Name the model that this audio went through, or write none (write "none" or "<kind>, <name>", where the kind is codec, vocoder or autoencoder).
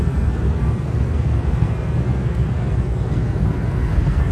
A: codec, SNAC